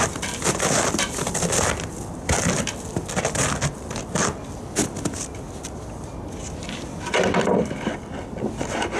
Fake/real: real